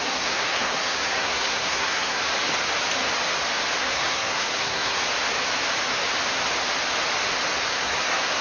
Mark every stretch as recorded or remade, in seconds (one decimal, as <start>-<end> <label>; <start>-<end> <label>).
0.0-2.2 remade; 2.2-3.8 recorded; 3.8-5.0 remade; 5.0-7.7 recorded; 7.7-8.4 remade